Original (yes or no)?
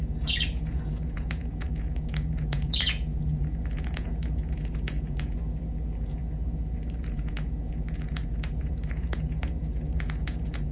no